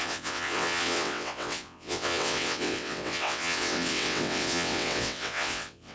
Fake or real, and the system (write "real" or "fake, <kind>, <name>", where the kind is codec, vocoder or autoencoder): fake, vocoder, WaveNeXt